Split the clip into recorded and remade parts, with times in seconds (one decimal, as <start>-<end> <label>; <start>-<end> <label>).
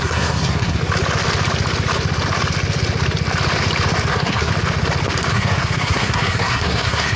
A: 0.0-0.8 remade; 0.8-4.1 recorded; 4.1-4.5 remade; 4.5-5.3 recorded; 5.3-7.2 remade